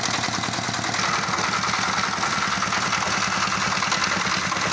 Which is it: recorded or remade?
recorded